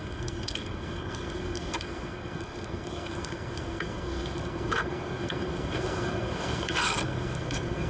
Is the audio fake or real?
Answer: fake